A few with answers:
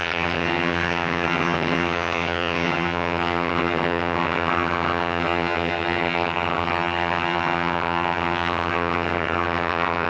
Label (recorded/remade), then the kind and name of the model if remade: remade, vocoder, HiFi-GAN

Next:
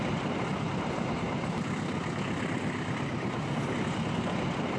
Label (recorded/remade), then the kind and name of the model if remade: remade, vocoder, BigVGAN v2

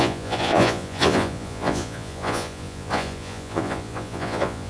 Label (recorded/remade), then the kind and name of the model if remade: remade, vocoder, Vocos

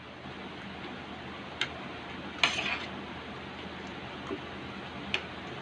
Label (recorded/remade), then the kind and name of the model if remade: recorded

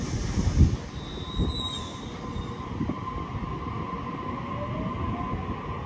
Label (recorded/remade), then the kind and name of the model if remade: recorded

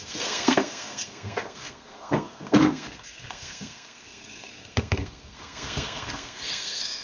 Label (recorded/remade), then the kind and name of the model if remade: remade, codec, SNAC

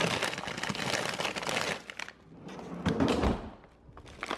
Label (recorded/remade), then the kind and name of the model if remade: recorded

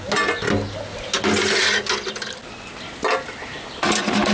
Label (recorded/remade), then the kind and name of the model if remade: recorded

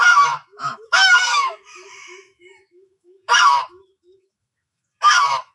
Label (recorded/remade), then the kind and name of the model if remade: remade, autoencoder, DAC-VAE